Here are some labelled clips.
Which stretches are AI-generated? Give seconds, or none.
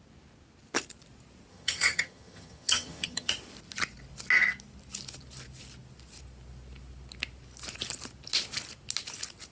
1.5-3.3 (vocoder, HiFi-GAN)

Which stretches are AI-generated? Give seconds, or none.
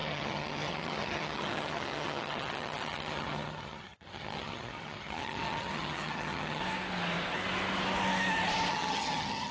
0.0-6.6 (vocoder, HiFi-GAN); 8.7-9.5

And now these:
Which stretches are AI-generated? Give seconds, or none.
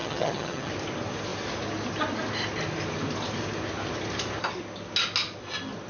0.0-0.7 (vocoder, HiFi-GAN)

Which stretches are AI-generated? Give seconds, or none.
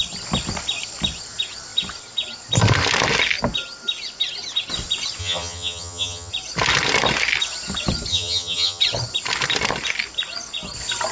5.2-6.3 (vocoder, HiFi-GAN); 8.1-8.8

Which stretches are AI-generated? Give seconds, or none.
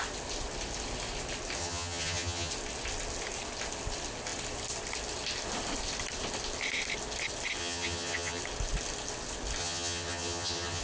1.6-2.5 (vocoder, HiFi-GAN); 7.6-8.4; 9.6-10.8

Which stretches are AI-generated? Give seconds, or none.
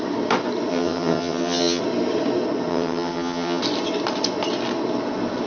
0.7-1.8 (vocoder, HiFi-GAN); 2.7-3.6